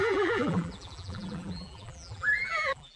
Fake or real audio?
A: fake